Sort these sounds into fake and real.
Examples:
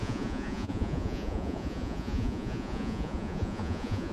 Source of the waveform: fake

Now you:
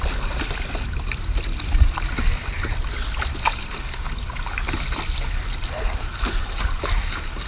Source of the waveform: real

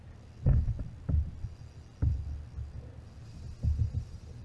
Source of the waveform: real